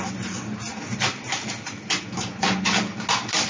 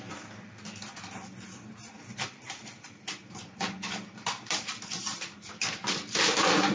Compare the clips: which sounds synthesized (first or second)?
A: second